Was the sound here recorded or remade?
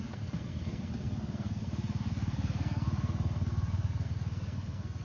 remade